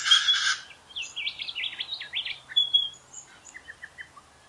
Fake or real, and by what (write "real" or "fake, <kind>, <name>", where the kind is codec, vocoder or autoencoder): real